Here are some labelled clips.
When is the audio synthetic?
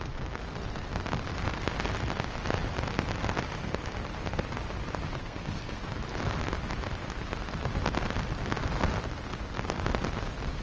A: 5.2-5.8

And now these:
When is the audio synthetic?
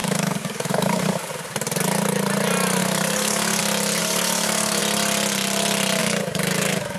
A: 0.0-1.3; 2.8-3.6; 4.0-4.8; 6.0-7.0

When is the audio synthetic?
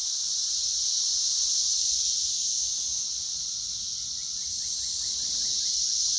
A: none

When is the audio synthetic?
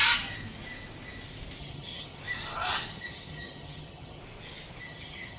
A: 1.6-2.2; 2.9-4.2; 4.8-5.4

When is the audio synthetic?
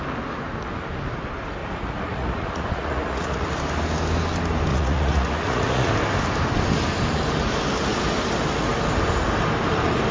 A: 1.6-3.5; 4.7-5.9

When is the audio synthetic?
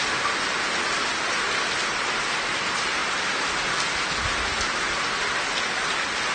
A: none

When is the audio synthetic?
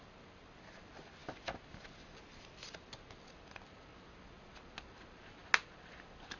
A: none